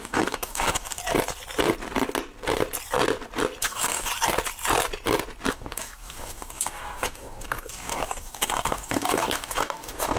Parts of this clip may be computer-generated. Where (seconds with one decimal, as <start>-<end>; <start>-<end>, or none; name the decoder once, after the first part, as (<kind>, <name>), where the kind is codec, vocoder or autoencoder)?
0.0-1.0 (codec, DAC); 3.6-4.1; 5.5-10.2